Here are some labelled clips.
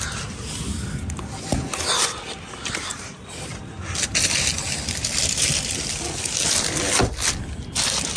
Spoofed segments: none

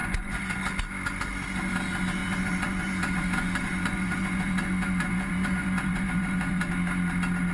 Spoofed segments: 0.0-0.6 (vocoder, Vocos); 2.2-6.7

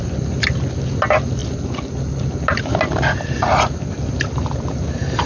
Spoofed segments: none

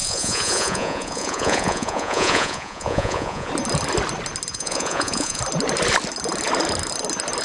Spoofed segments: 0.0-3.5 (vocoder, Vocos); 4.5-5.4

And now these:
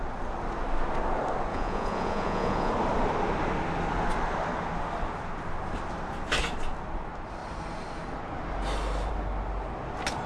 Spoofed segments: 1.5-2.7 (vocoder, Vocos)

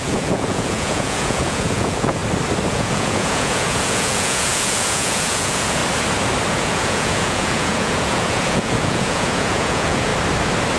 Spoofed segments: 0.0-2.2 (vocoder, Vocos); 2.7-5.8; 6.5-10.1

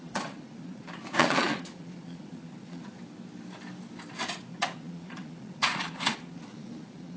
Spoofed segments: 0.0-2.9 (vocoder, Vocos); 4.5-7.2

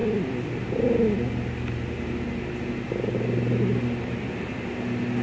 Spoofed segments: none